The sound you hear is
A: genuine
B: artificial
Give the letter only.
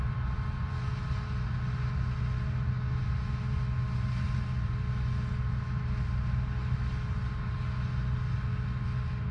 A